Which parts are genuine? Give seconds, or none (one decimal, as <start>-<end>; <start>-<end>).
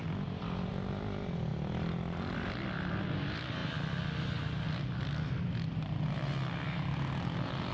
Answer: 0.0-7.7